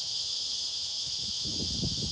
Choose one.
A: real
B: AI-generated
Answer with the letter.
B